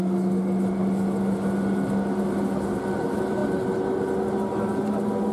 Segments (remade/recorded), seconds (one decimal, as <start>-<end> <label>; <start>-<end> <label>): 0.0-5.3 recorded